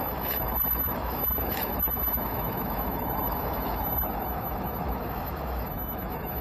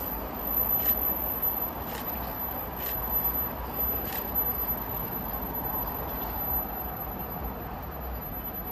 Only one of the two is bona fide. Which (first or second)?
second